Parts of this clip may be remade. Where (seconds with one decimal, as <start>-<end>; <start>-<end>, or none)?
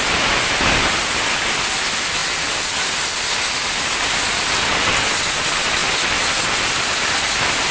none